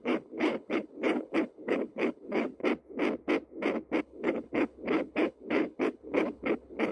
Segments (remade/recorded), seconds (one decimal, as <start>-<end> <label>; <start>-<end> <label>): 0.0-2.6 remade; 2.6-4.0 recorded; 4.0-6.9 remade